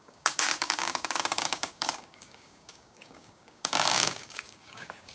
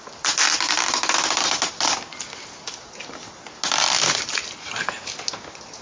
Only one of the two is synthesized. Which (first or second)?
first